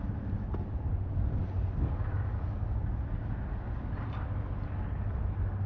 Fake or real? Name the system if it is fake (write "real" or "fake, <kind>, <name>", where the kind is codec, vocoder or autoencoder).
real